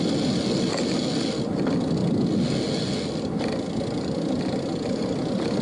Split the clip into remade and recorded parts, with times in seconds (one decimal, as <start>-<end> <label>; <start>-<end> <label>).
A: 0.0-5.6 recorded